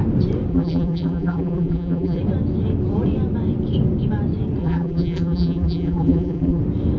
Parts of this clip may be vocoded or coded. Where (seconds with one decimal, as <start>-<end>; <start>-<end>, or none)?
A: 0.5-2.2; 4.6-6.6